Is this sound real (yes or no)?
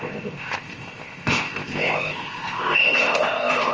no